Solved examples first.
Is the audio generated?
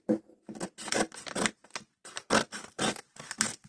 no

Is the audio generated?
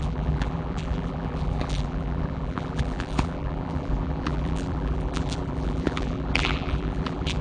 yes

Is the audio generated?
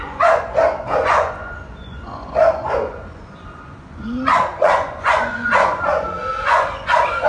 yes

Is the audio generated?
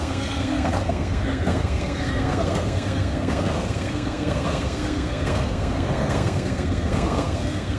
yes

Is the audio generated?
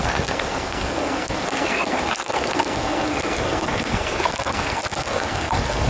yes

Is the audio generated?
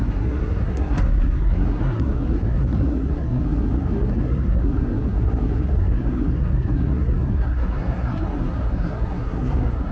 yes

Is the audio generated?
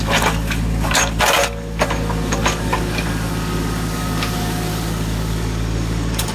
yes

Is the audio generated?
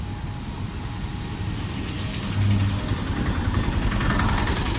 no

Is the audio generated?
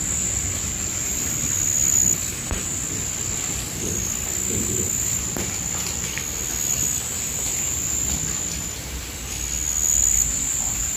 no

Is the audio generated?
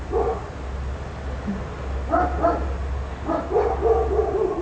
no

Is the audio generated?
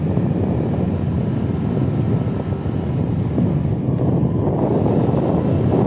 no